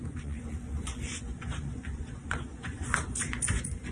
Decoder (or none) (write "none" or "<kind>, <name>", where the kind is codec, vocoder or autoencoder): vocoder, Vocos